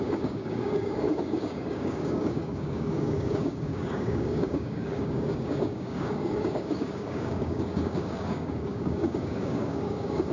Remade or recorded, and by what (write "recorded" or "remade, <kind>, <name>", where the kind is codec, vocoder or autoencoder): remade, codec, DAC